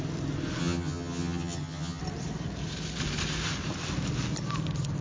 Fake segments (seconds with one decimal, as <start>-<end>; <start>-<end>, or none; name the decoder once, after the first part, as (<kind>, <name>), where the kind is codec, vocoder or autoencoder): 0.6-2.0 (vocoder, HiFi-GAN)